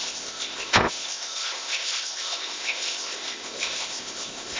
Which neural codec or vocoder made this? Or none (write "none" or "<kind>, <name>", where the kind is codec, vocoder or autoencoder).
codec, ZipCodec